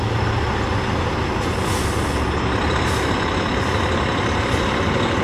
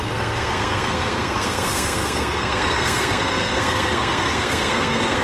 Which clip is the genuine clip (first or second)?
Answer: first